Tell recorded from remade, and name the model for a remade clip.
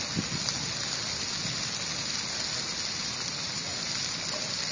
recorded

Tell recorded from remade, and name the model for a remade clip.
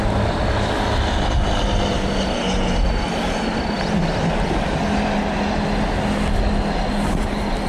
recorded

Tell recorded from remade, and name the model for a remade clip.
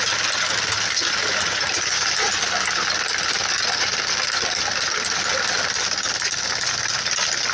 recorded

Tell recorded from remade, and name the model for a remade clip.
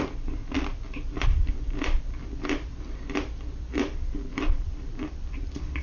remade, vocoder, BigVGAN v2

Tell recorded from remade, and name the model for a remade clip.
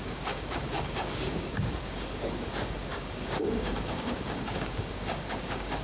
remade, codec, DAC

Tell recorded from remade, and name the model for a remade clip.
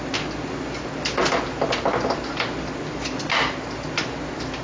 recorded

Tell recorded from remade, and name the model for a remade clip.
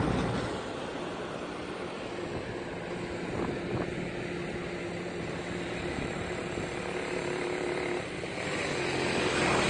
recorded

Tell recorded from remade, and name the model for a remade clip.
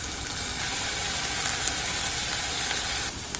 recorded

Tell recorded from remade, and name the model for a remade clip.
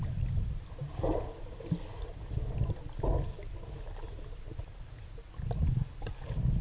recorded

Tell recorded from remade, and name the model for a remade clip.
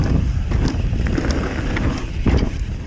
recorded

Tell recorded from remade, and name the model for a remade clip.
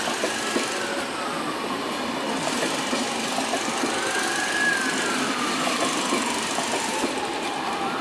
recorded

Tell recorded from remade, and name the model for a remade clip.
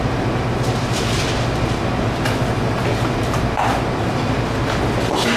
recorded